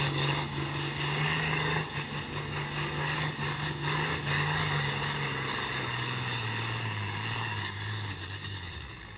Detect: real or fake fake